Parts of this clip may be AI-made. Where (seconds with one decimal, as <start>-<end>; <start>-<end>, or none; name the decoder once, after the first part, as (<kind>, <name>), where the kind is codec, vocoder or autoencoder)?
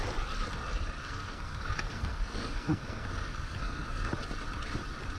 1.0-4.1 (codec, SNAC)